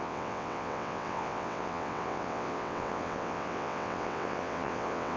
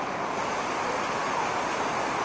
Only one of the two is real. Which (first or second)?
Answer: second